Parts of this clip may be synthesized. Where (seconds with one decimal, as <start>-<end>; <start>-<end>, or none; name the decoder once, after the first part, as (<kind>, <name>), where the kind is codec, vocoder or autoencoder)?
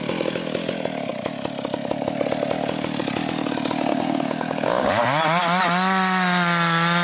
3.9-4.9 (codec, DAC)